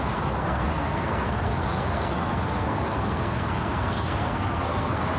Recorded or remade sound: remade